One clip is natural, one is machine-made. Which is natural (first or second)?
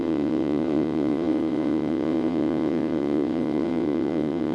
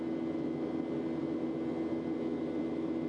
second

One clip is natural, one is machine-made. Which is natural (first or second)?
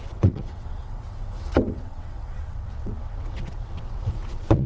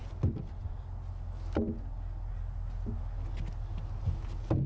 second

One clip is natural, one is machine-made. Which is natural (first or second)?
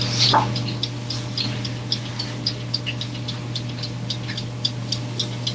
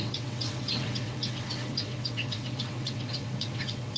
first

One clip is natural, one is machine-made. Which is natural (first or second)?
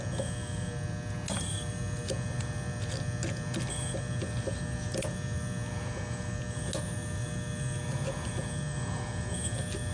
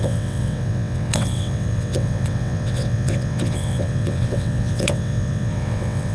first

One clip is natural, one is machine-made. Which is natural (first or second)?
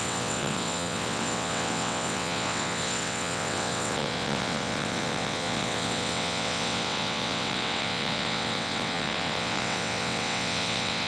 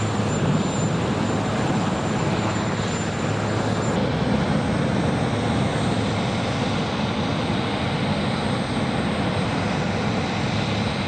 second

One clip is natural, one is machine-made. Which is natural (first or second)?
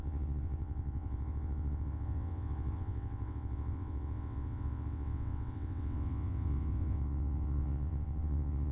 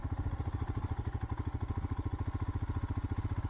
second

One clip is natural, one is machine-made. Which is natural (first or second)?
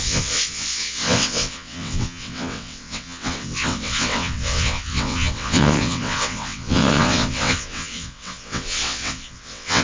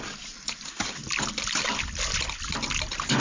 second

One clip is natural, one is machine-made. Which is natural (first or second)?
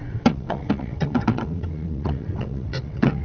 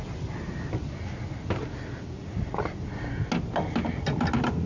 second